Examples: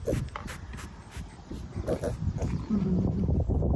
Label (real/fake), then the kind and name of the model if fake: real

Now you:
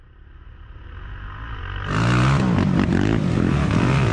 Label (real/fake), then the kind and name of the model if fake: real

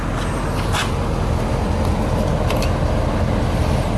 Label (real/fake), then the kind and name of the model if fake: real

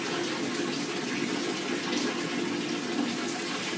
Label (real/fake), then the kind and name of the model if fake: real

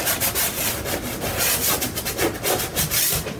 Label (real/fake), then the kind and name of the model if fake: real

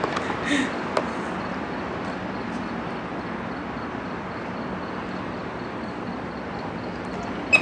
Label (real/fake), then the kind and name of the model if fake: real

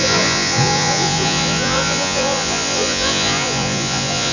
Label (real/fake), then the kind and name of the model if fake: fake, vocoder, Vocos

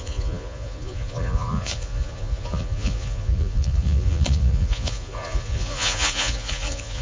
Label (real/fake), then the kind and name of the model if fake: fake, vocoder, Vocos